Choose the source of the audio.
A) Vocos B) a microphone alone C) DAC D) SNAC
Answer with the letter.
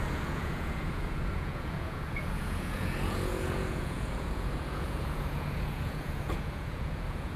A